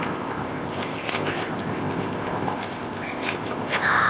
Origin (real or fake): fake